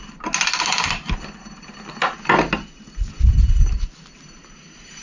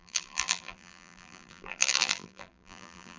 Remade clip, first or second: second